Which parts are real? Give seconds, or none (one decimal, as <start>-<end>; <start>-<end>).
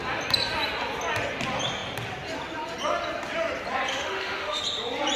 0.0-3.9; 4.6-5.2